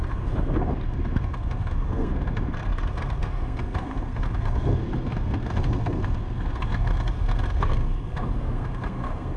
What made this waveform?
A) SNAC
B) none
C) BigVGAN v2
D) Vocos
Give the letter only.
A